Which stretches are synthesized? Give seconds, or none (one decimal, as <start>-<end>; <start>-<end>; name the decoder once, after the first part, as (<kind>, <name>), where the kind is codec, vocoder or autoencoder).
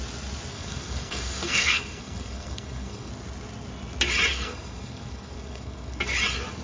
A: 0.5-3.1 (codec, SNAC); 4.3-6.0